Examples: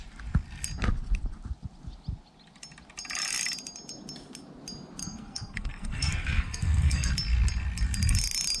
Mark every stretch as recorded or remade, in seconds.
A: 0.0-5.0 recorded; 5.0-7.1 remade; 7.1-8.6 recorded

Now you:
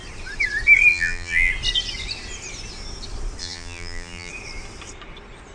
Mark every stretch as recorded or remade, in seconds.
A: 0.0-0.9 recorded; 0.9-1.5 remade; 1.5-3.4 recorded; 3.4-4.3 remade; 4.3-5.5 recorded

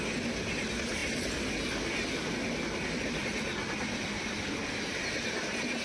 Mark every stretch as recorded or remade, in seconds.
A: 0.0-5.8 recorded

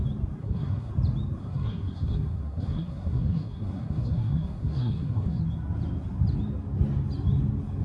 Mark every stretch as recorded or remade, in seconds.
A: 0.0-0.4 recorded; 0.4-0.9 remade; 0.9-1.4 recorded; 1.4-5.4 remade; 5.4-7.8 recorded

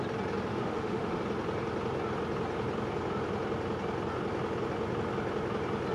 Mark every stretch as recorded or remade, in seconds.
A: 0.0-0.5 recorded; 0.5-1.2 remade; 1.2-5.9 recorded

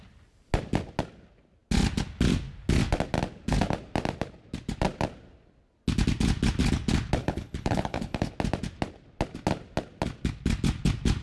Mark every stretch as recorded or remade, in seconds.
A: 0.0-7.2 recorded; 7.2-8.3 remade; 8.3-11.2 recorded

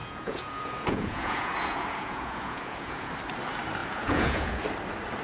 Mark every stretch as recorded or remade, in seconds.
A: 0.0-3.1 remade; 3.1-3.8 recorded; 3.8-4.6 remade; 4.6-5.2 recorded

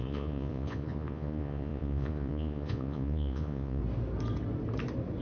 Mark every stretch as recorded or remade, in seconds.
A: 0.0-3.8 remade; 3.8-5.2 recorded